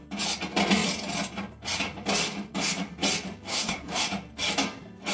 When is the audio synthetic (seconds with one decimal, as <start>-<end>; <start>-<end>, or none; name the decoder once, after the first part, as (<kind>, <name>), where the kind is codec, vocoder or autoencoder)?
3.5-4.1 (codec, SNAC)